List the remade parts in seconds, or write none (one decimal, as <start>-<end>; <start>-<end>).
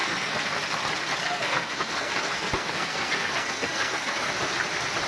0.0-0.6; 1.2-4.3